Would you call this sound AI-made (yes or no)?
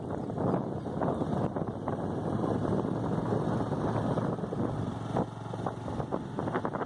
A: no